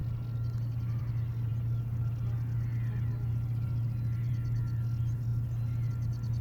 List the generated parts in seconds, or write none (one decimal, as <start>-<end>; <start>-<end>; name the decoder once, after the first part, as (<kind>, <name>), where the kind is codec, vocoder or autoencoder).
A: none